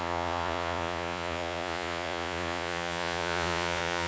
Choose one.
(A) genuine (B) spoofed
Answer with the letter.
B